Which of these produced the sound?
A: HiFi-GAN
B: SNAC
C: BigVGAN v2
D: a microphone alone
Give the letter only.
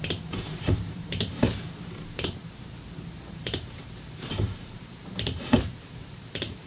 C